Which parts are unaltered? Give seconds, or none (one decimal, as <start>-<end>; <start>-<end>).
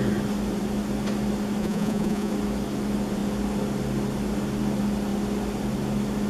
0.0-1.6; 2.3-6.3